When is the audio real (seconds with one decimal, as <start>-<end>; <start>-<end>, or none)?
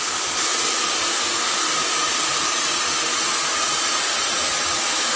0.0-3.1; 3.7-5.2